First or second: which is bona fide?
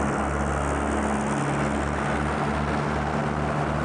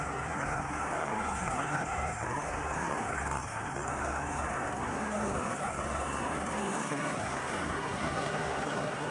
first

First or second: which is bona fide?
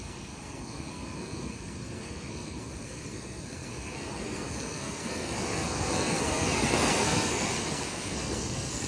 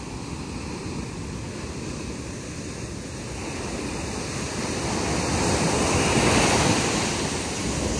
second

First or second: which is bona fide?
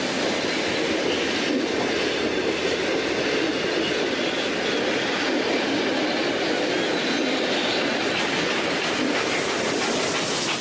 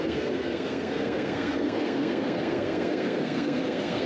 first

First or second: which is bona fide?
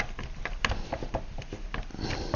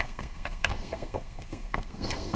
first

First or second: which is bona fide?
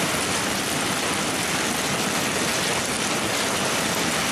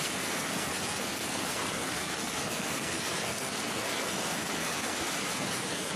first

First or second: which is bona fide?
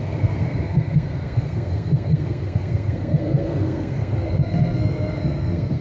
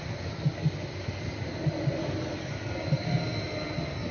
second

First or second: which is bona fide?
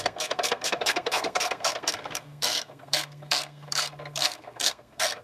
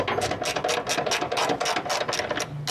second